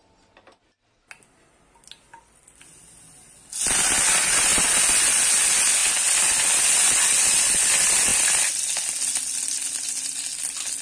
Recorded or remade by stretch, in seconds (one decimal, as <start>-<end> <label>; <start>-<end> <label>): 0.0-10.8 recorded